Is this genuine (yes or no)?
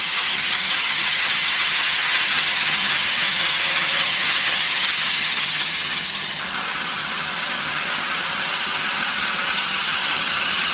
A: no